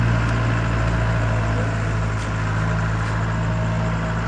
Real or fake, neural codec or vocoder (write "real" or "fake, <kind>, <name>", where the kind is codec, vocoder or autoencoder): real